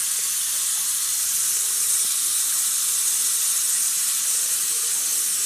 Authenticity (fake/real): fake